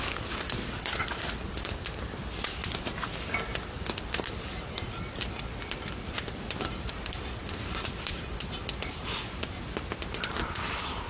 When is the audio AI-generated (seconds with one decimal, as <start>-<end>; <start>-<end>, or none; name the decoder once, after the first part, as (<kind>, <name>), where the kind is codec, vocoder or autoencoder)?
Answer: 0.0-2.6 (vocoder, BigVGAN v2); 3.7-11.1